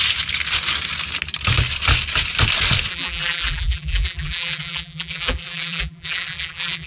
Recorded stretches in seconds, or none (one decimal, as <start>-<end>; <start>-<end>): 0.0-2.9